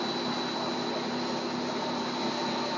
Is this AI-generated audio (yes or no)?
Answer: no